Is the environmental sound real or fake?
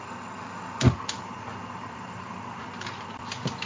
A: real